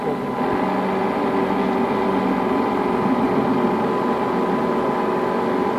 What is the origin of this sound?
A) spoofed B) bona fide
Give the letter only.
B